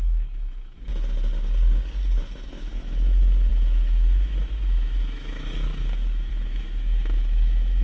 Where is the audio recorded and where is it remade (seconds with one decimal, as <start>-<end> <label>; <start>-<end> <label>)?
0.0-0.9 remade; 0.9-2.2 recorded; 2.2-7.8 remade